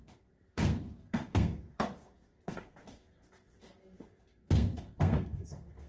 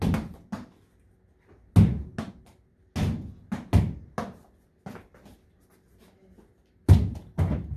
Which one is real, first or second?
second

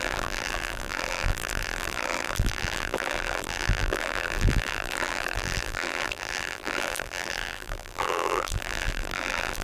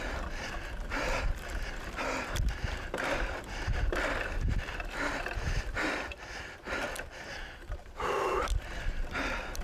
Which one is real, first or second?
second